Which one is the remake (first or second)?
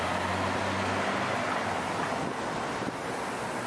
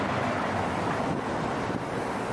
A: second